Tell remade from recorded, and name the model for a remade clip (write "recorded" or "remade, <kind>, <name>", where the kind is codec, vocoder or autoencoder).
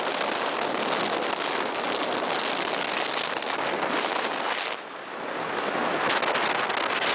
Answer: recorded